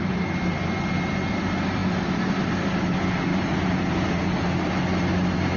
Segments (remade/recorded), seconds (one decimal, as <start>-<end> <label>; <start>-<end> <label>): 0.0-3.3 recorded; 3.3-4.7 remade; 4.7-5.6 recorded